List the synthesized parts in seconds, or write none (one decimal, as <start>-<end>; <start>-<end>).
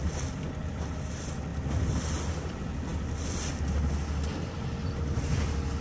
none